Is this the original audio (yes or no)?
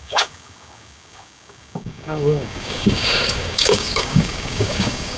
no